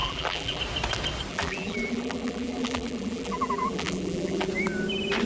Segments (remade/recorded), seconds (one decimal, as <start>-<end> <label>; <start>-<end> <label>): 0.0-0.6 remade; 0.6-1.3 recorded; 1.3-4.5 remade; 4.5-5.3 recorded